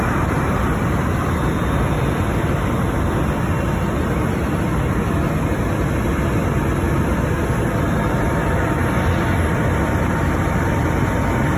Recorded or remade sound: recorded